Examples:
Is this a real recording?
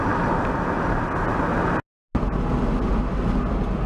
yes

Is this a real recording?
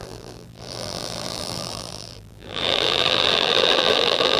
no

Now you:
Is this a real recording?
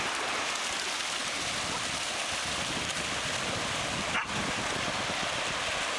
yes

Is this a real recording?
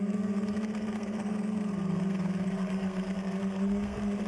no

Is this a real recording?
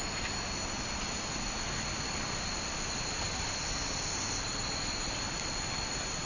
yes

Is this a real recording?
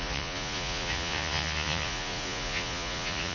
no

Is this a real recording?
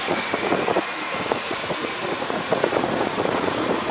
no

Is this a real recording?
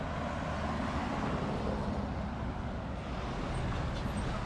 yes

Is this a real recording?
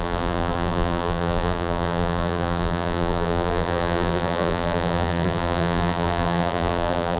no